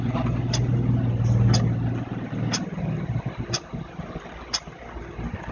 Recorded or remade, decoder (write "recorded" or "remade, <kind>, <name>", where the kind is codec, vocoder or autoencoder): recorded